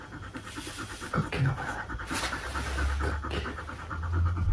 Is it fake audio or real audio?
real